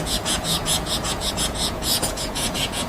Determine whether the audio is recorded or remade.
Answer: remade